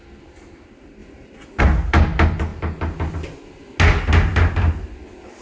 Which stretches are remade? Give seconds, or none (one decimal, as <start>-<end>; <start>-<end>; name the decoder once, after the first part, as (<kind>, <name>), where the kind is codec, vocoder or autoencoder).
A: none

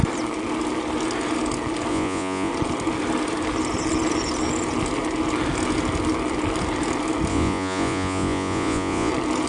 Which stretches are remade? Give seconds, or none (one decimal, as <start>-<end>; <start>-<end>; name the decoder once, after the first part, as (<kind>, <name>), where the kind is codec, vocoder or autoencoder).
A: 1.9-2.5 (vocoder, Vocos); 7.3-9.1

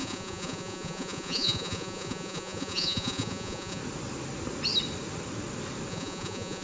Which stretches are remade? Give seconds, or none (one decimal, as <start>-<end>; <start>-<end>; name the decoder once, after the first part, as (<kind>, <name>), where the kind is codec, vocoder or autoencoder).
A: 0.0-3.8 (vocoder, Vocos); 5.9-6.6

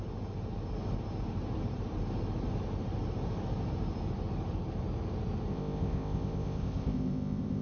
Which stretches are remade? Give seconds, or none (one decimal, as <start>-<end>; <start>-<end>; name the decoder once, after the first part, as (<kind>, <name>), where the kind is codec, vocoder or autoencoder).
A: 5.5-7.6 (codec, ZipCodec)

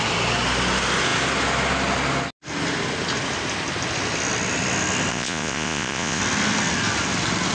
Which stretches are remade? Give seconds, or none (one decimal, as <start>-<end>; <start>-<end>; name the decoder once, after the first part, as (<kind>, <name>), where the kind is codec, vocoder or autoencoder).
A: 5.1-6.2 (vocoder, Vocos)